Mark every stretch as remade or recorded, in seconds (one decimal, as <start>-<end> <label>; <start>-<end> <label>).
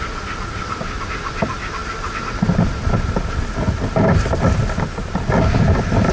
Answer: 0.0-6.1 recorded